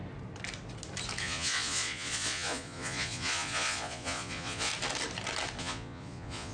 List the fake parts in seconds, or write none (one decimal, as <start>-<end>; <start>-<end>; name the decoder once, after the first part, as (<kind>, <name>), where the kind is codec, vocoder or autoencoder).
1.2-4.7 (vocoder, Vocos); 5.6-6.5